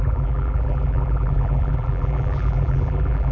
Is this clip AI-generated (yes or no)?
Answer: yes